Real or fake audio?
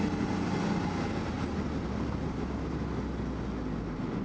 real